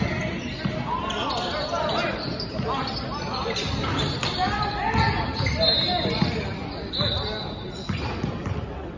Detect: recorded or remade recorded